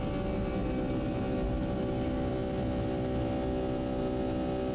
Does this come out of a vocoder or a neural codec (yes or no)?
no